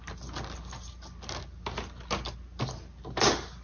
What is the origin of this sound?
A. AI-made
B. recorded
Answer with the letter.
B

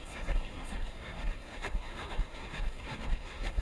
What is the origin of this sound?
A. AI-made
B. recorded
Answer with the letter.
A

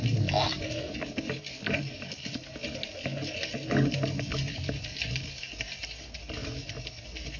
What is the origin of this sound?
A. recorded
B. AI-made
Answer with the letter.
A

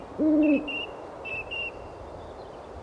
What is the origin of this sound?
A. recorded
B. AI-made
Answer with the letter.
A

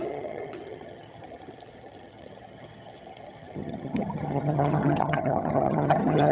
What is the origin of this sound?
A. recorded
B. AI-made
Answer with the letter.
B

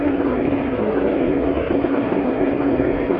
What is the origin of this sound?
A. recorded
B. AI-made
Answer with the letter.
B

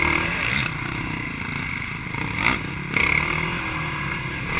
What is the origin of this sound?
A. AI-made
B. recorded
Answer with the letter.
B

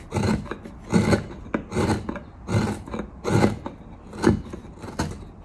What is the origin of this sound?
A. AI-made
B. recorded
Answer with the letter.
B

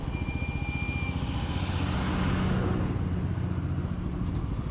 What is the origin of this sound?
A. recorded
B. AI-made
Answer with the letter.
A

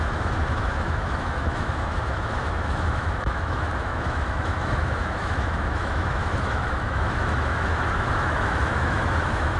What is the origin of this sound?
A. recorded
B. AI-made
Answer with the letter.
B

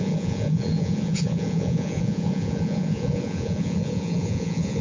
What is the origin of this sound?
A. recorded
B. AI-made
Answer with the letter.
B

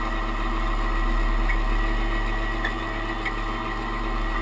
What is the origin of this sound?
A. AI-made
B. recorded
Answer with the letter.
B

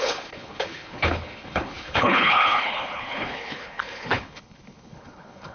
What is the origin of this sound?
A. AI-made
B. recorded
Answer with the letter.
A